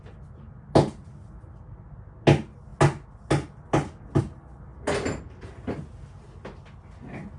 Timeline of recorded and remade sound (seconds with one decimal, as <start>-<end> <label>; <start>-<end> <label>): 0.0-7.4 recorded